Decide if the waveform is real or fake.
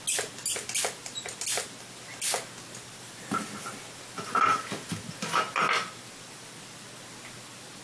real